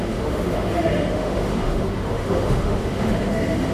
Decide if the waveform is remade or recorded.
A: remade